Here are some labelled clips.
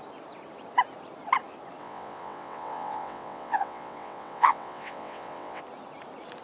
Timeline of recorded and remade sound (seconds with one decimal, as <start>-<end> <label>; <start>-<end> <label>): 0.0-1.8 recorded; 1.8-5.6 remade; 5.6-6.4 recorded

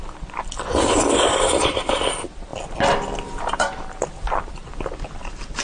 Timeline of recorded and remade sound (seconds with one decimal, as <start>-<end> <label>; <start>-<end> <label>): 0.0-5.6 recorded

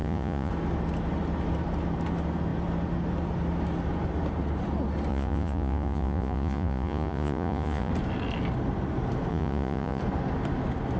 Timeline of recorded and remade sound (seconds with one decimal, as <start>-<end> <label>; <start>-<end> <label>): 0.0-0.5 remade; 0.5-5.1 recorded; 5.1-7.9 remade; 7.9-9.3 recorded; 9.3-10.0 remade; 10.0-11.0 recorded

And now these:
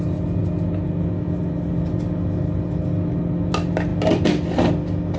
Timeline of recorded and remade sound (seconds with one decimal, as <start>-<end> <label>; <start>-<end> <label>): 0.0-5.2 recorded